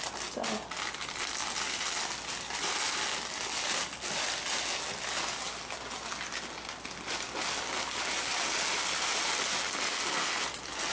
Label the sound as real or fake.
real